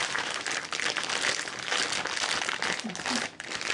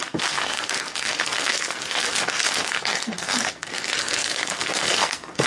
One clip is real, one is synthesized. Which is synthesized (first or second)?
second